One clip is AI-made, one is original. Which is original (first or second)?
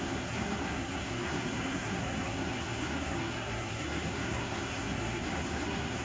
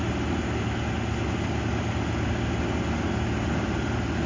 second